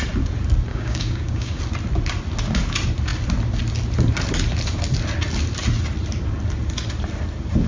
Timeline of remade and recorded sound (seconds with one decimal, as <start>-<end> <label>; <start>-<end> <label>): 0.0-0.7 recorded; 0.7-1.6 remade; 1.6-7.7 recorded